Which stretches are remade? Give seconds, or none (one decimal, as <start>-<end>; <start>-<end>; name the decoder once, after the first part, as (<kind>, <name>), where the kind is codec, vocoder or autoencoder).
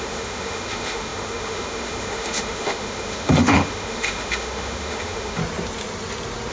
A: 0.0-5.4 (autoencoder, DAC-VAE)